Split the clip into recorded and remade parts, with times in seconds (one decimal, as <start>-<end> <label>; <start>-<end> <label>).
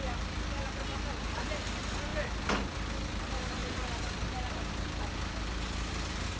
0.0-3.6 recorded; 3.6-4.7 remade; 4.7-6.4 recorded